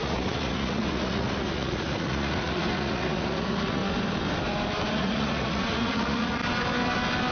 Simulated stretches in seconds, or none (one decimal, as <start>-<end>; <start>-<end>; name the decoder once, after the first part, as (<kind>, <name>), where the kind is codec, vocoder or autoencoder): 0.0-3.8 (vocoder, Vocos); 4.9-6.4

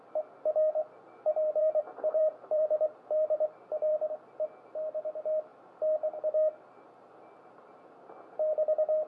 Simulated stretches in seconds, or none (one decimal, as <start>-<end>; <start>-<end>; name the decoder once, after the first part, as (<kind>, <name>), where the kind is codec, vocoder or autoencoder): 0.8-4.1 (vocoder, BigVGAN v2)

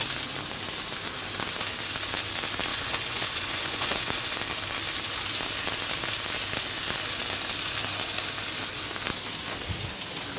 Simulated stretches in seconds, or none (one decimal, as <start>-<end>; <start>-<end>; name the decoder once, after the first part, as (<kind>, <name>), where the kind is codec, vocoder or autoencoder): 2.7-4.4 (vocoder, Vocos)

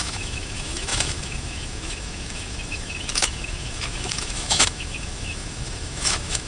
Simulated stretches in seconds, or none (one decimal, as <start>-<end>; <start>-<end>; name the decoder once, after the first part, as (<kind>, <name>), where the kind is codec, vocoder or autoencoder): 0.0-6.5 (autoencoder, DAC-VAE)

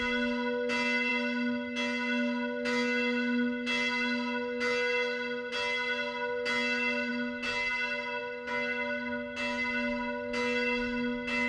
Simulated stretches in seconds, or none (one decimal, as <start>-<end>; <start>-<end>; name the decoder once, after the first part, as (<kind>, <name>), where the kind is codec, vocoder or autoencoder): none